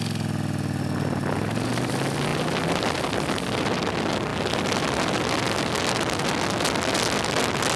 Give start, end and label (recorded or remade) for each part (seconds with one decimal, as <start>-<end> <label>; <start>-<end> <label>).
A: 0.0-7.8 recorded